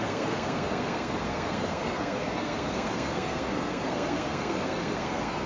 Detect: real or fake fake